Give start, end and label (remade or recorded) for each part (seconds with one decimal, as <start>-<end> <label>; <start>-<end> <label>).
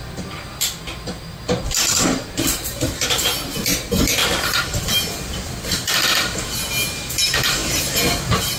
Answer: 0.0-4.2 recorded; 4.2-5.9 remade; 5.9-8.6 recorded